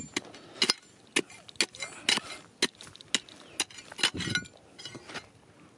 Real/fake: real